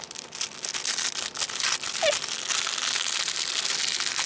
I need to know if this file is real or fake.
real